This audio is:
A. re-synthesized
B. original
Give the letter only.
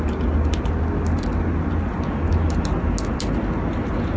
B